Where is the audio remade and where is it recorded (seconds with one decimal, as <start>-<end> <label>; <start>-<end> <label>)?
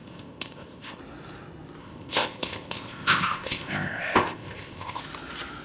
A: 0.0-1.0 remade; 1.0-1.8 recorded; 1.8-5.0 remade; 5.0-5.6 recorded